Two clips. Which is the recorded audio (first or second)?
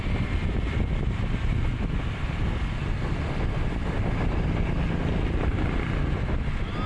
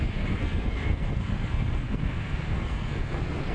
first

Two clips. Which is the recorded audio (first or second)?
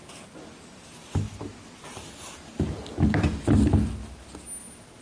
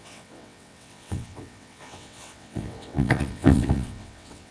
first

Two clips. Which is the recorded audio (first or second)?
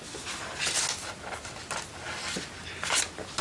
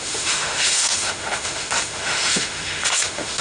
first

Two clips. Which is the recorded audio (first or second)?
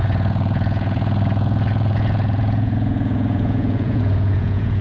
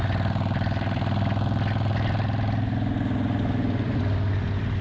second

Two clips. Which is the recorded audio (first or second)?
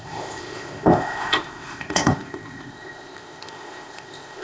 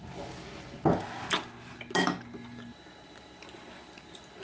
second